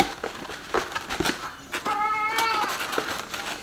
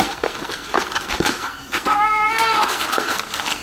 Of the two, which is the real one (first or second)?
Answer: first